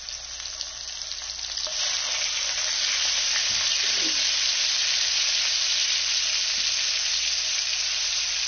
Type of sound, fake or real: real